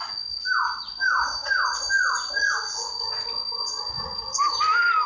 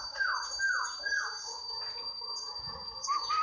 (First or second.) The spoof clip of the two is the second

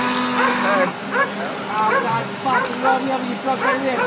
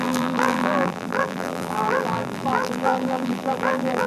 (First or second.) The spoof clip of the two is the second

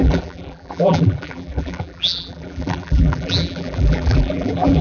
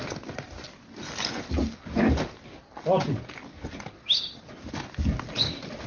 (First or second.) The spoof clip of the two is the first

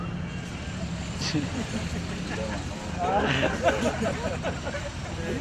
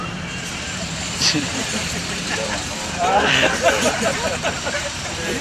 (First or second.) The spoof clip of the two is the second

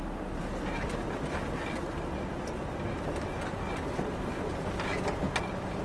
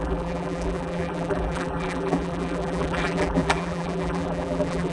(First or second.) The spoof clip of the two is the second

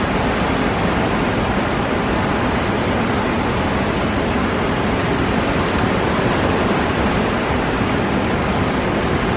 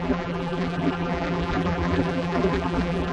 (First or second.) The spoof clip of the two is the second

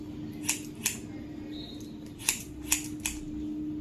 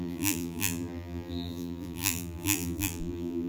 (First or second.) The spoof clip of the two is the second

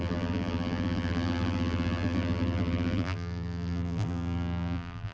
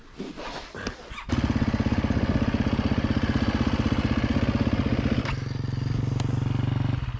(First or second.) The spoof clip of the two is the first